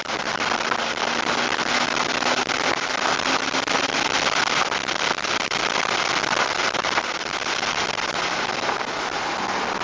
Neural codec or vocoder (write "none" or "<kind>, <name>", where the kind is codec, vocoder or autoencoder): none